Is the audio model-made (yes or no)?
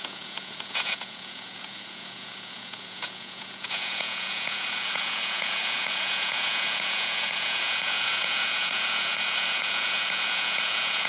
yes